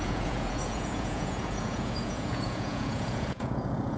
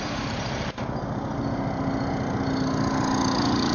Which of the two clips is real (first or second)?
second